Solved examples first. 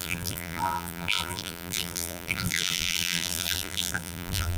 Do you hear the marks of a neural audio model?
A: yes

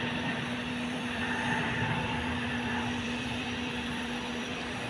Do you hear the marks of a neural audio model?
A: yes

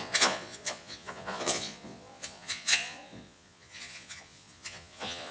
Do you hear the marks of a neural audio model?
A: yes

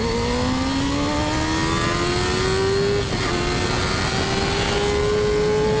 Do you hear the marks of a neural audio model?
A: no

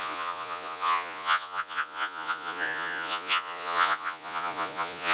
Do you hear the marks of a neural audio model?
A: yes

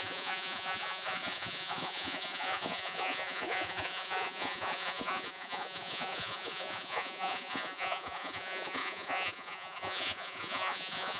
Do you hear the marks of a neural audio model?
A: yes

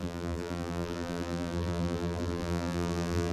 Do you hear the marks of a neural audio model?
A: yes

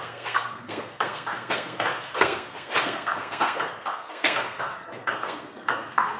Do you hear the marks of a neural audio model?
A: yes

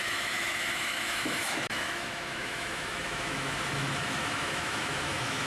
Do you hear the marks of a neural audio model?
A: yes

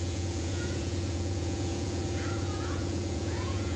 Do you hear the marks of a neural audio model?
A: yes